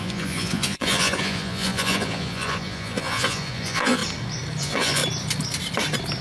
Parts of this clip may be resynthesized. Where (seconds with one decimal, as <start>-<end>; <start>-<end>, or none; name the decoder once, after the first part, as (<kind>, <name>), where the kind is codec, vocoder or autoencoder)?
0.0-4.0 (vocoder, Vocos); 4.6-5.0